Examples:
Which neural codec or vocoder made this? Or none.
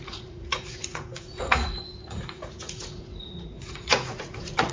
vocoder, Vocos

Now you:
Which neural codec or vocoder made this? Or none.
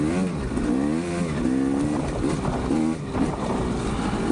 none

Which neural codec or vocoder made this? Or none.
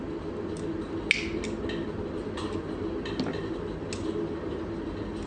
none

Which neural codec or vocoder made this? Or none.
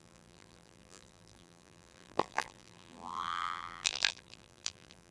vocoder, BigVGAN v2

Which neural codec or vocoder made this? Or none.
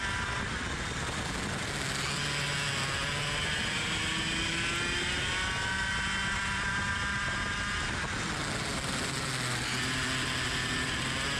none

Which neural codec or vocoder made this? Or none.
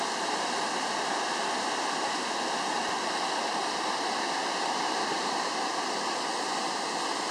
none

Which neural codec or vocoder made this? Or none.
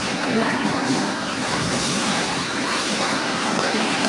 codec, SNAC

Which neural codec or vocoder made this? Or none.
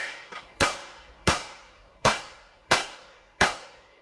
codec, SNAC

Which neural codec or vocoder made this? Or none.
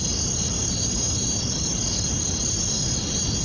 none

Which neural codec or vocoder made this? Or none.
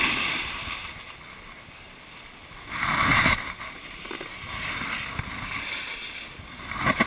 none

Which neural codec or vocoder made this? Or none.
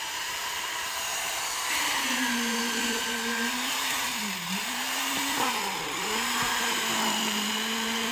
vocoder, BigVGAN v2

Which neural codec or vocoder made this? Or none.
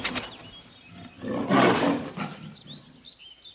none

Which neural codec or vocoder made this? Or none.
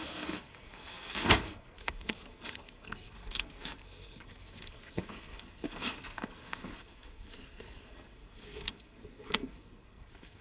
codec, SNAC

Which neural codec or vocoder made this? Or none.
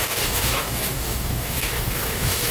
codec, DAC